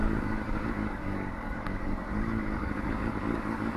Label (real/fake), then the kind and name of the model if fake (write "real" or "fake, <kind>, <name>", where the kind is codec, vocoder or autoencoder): fake, codec, DAC